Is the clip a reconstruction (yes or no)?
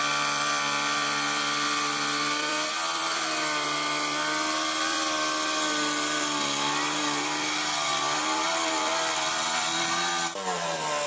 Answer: yes